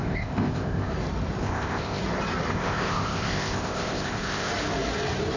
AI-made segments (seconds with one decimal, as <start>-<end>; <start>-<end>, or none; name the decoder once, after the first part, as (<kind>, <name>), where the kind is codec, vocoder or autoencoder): 0.0-0.9 (codec, ZipCodec); 1.4-2.0; 2.5-4.5